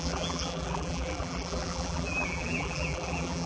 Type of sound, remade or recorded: remade